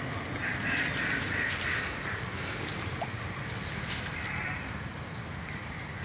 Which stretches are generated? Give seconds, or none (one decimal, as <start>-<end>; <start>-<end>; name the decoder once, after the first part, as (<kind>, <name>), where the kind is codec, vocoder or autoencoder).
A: none